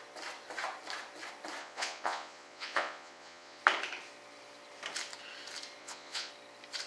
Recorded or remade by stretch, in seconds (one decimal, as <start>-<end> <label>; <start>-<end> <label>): 0.0-1.6 recorded; 1.6-3.6 remade; 3.6-5.8 recorded; 5.8-6.3 remade; 6.3-6.9 recorded